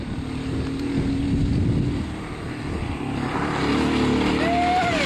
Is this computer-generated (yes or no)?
no